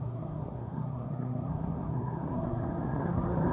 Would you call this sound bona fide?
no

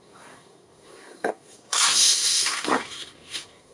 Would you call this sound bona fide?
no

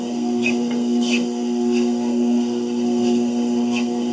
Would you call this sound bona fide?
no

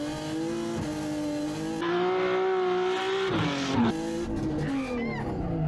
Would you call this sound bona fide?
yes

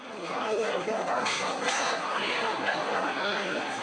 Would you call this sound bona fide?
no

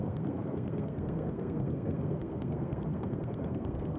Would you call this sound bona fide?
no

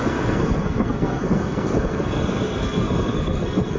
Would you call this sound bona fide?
no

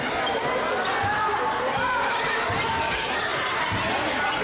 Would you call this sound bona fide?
yes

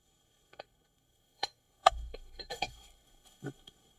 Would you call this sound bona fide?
no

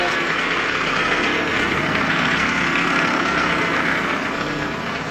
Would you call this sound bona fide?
no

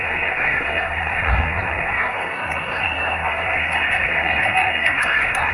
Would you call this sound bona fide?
no